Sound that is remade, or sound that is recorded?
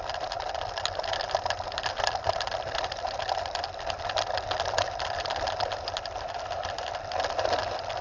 recorded